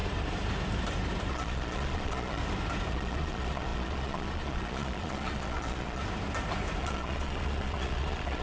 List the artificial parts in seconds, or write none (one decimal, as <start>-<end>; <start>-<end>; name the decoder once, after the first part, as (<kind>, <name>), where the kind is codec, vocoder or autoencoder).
1.3-2.4 (vocoder, Vocos); 2.9-6.0; 6.8-8.4